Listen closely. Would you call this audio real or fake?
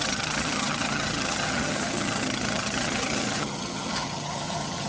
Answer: fake